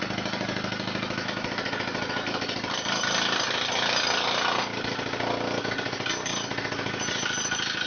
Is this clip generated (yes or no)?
no